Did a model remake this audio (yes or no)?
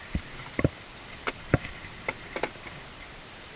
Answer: yes